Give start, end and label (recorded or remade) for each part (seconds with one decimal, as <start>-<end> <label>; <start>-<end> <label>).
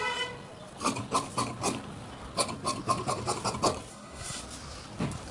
0.0-3.9 recorded; 3.9-4.4 remade; 4.4-5.3 recorded